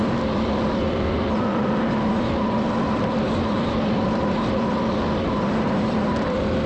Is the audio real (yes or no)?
no